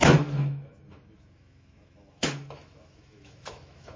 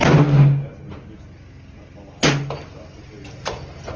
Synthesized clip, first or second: first